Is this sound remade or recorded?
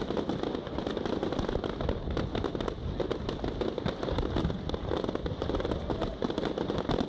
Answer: recorded